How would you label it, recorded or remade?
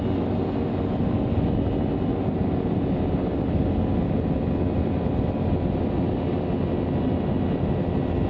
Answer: recorded